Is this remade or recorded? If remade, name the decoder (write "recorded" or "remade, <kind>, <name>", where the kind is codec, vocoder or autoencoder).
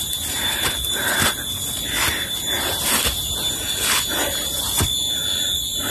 recorded